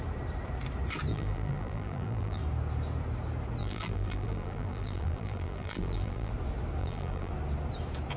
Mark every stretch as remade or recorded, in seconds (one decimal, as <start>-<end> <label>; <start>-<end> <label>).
0.0-1.1 recorded; 1.1-2.4 remade; 2.4-3.6 recorded; 3.6-6.3 remade; 6.3-6.8 recorded; 6.8-7.3 remade; 7.3-8.2 recorded